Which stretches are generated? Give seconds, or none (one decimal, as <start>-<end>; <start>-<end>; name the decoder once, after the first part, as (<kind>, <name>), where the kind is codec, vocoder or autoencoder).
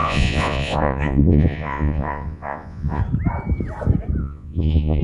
0.0-3.0 (vocoder, Vocos); 4.2-5.0